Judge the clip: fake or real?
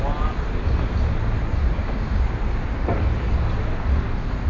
real